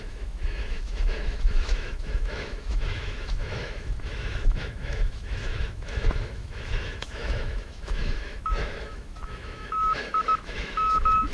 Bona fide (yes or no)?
no